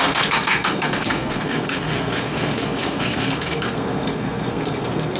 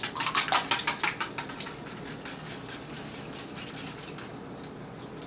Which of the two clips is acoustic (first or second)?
second